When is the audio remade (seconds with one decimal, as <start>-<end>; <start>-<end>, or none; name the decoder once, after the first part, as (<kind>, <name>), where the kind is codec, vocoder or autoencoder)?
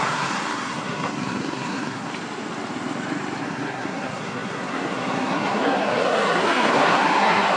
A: 0.0-2.1 (codec, SNAC); 3.4-7.6